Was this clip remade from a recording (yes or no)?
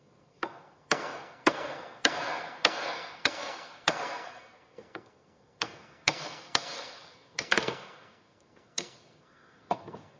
yes